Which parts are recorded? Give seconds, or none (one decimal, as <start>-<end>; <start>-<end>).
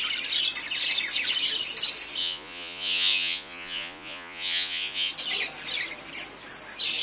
0.0-2.2; 5.1-7.0